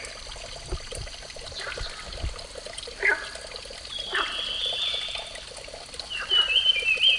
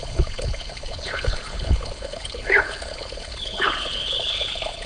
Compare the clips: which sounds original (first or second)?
first